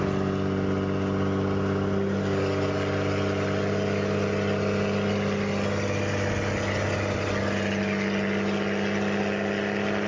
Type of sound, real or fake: real